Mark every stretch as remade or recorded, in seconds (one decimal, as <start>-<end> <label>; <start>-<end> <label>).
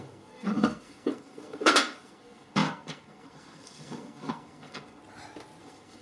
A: 0.0-5.0 remade; 5.0-5.6 recorded; 5.6-6.0 remade